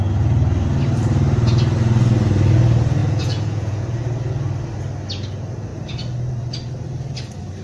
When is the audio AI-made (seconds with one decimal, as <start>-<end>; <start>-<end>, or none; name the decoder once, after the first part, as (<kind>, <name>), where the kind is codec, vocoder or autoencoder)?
3.0-4.0 (vocoder, Vocos)